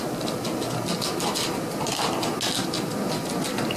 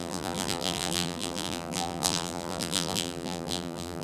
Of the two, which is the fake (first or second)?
second